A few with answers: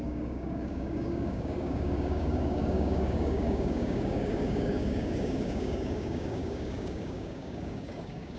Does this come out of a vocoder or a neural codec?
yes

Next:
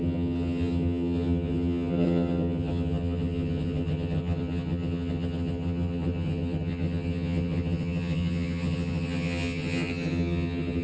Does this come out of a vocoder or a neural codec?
yes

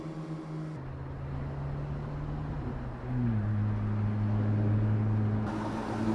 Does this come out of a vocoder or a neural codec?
no